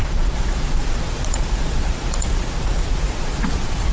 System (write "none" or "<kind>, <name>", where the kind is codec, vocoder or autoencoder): vocoder, Vocos